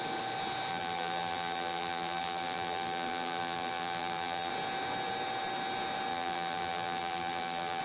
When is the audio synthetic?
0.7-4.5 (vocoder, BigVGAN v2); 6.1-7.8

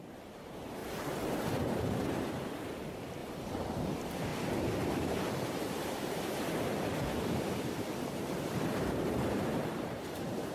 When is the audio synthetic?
0.0-3.2 (vocoder, BigVGAN v2); 3.7-4.3; 5.3-10.5

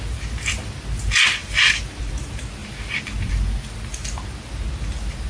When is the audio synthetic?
1.4-2.1 (vocoder, BigVGAN v2); 2.6-3.3